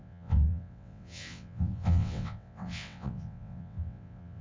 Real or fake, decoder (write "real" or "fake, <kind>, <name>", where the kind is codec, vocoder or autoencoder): fake, vocoder, WaveNeXt